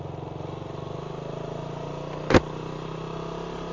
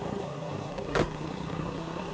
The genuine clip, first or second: first